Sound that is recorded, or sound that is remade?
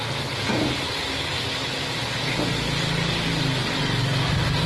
recorded